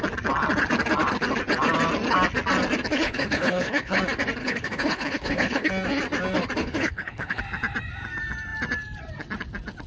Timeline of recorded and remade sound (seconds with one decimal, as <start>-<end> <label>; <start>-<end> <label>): 0.0-2.9 recorded; 2.9-4.0 remade; 4.0-4.4 recorded; 4.4-5.7 remade; 5.7-6.6 recorded; 6.6-7.4 remade; 7.4-9.9 recorded

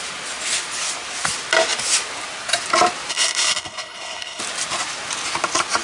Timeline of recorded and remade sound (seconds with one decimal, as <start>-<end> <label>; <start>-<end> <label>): 0.0-3.1 recorded; 3.1-4.4 remade; 4.4-5.8 recorded

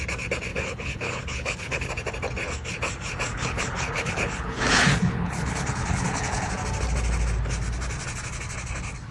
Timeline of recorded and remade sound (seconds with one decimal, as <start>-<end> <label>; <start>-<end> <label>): 0.0-0.5 recorded; 0.5-1.9 remade; 1.9-3.3 recorded; 3.3-6.5 remade; 6.5-9.1 recorded

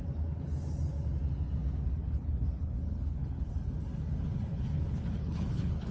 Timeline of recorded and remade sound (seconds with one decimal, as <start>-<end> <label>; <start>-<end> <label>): 0.0-1.8 recorded; 1.8-3.5 remade; 3.5-4.5 recorded; 4.5-5.9 remade